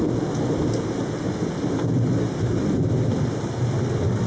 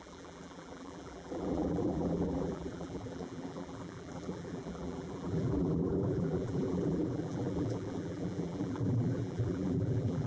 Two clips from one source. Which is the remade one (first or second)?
second